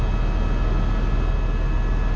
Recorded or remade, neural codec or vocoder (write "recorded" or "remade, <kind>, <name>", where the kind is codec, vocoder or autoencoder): recorded